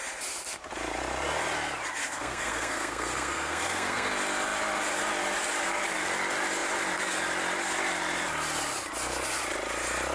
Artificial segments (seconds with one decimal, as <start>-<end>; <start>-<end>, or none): 2.0-4.1